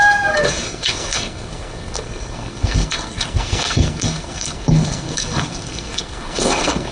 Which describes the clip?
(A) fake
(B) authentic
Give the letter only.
A